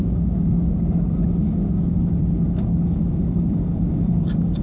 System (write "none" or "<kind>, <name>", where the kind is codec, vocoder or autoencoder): codec, DAC